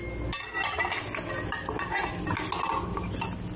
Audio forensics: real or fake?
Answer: real